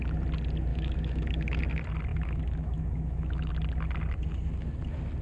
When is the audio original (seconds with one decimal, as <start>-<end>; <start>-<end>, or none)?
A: 0.0-0.7; 1.6-2.1; 3.5-5.2